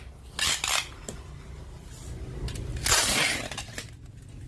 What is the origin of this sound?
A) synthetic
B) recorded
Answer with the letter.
B